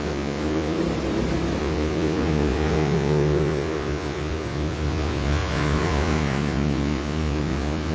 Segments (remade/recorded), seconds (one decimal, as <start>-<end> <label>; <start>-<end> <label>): 0.0-0.8 remade; 0.8-1.6 recorded; 1.6-7.9 remade